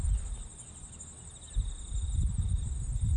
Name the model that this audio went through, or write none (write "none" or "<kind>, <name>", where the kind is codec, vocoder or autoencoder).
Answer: none